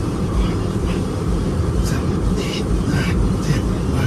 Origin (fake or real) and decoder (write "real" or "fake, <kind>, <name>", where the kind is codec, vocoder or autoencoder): fake, vocoder, BigVGAN v2